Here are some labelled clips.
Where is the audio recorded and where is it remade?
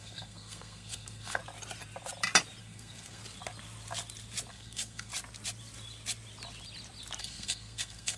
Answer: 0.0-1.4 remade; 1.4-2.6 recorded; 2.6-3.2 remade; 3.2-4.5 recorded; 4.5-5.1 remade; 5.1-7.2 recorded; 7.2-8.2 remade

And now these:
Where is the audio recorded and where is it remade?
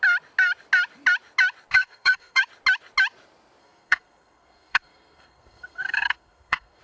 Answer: 0.0-1.7 recorded; 1.7-2.4 remade; 2.4-3.6 recorded; 3.6-6.8 remade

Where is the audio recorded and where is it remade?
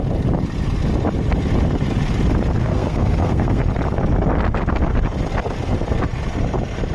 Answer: 0.0-2.6 recorded; 2.6-3.6 remade; 3.6-6.9 recorded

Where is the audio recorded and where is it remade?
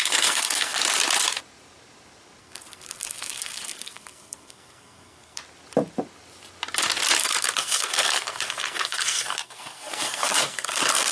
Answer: 0.0-0.8 remade; 0.8-2.4 recorded; 2.4-5.4 remade; 5.4-7.2 recorded; 7.2-11.1 remade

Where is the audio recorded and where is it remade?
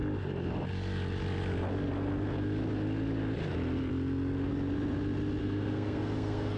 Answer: 0.0-5.4 recorded; 5.4-6.6 remade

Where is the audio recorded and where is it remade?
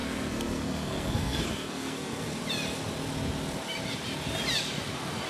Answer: 0.0-2.4 remade; 2.4-5.3 recorded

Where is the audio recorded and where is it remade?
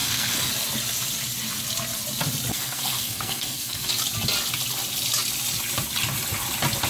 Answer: 0.0-0.5 remade; 0.5-2.5 recorded; 2.5-3.9 remade; 3.9-6.9 recorded